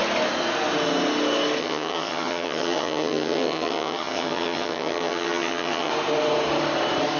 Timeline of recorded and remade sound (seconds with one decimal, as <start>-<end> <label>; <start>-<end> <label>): 0.0-1.6 recorded; 1.6-5.9 remade; 5.9-7.2 recorded

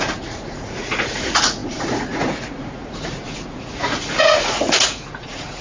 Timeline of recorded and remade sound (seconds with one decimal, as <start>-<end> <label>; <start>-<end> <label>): 0.0-5.6 remade

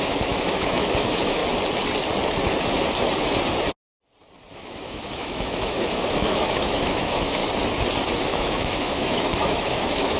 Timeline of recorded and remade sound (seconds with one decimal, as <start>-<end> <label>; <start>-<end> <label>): 0.0-1.4 remade; 1.4-4.5 recorded; 4.5-7.4 remade; 7.4-8.2 recorded; 8.2-10.2 remade

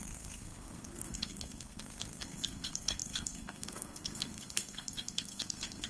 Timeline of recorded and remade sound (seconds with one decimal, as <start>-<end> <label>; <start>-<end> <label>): 0.0-5.9 remade